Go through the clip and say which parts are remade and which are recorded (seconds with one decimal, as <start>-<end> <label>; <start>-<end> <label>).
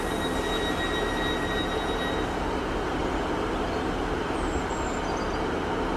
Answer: 0.0-3.0 recorded; 3.0-5.3 remade; 5.3-6.0 recorded